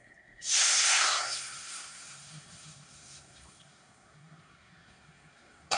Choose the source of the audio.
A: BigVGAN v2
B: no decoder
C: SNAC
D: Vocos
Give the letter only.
C